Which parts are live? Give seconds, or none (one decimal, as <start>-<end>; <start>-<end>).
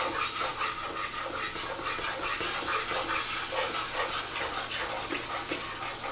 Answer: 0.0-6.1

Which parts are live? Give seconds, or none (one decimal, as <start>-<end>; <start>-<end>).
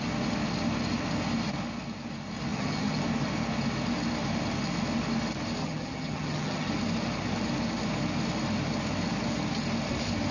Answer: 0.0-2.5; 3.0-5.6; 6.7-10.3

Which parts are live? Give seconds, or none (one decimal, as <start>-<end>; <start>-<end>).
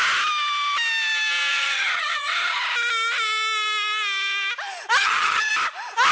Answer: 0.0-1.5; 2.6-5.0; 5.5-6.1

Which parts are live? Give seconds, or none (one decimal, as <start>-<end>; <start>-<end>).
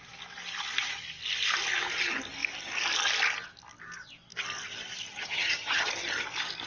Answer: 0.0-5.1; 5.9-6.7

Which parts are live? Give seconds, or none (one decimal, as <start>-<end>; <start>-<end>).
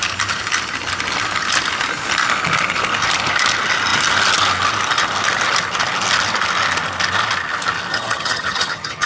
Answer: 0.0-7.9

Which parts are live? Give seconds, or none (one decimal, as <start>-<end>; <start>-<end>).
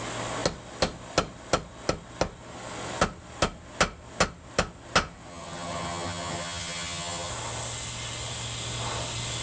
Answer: 0.0-5.3; 7.3-9.4